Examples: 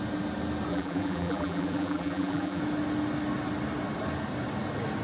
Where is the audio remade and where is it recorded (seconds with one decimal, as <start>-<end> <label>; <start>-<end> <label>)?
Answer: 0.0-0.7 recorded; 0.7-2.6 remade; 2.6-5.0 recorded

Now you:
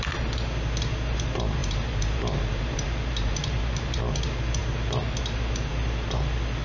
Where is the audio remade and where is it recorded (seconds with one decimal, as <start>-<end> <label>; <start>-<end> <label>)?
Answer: 0.0-1.6 recorded; 1.6-4.0 remade; 4.0-6.6 recorded

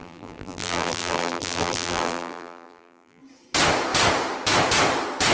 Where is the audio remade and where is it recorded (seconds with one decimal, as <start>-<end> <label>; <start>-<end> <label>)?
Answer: 0.0-3.2 remade; 3.2-5.3 recorded